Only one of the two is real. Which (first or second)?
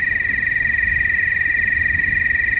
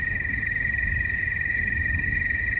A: first